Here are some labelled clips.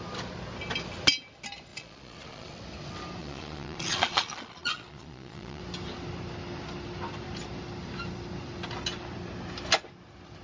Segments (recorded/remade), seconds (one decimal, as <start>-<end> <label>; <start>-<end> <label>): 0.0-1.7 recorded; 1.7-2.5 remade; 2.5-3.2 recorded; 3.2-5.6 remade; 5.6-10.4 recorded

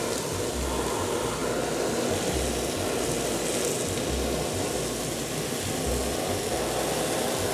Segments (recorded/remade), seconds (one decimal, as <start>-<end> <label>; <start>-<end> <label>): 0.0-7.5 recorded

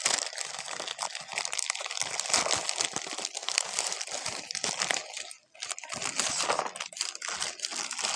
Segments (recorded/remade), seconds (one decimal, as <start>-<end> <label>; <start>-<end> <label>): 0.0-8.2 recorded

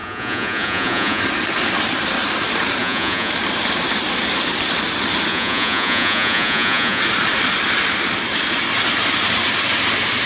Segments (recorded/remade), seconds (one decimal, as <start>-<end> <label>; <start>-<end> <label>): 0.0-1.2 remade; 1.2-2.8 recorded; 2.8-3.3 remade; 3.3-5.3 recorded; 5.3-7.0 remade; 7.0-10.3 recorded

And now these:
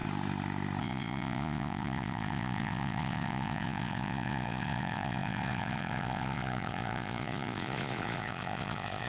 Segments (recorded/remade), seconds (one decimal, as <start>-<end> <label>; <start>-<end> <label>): 0.0-0.8 recorded; 0.8-9.1 remade

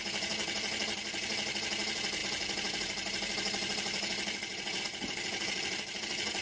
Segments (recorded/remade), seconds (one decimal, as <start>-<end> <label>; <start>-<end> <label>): 0.0-6.4 recorded

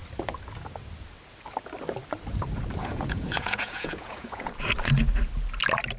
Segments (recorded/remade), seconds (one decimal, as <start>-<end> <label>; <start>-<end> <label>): 0.0-2.8 recorded; 2.8-4.5 remade; 4.5-6.0 recorded